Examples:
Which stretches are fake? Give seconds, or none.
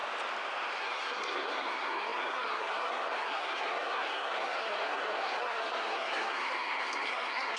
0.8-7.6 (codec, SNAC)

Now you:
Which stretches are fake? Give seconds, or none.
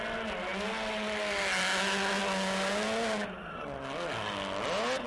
none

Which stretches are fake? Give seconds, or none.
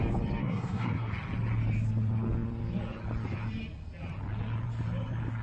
0.4-1.1 (codec, SNAC)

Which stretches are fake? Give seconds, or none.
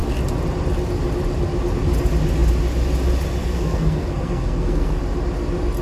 3.4-5.0 (codec, SNAC)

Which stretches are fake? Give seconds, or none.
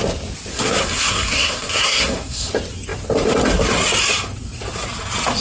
0.5-2.5 (codec, SNAC)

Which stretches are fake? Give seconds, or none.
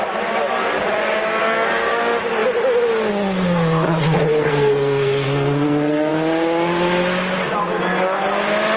1.4-2.0 (codec, SNAC); 4.2-6.1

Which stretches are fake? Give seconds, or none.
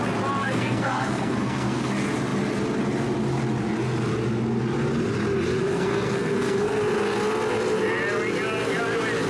0.4-1.9 (codec, SNAC); 5.6-6.7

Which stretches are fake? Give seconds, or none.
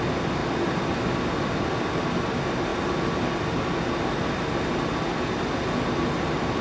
none